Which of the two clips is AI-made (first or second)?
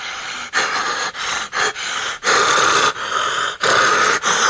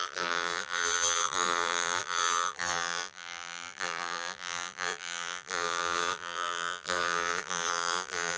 second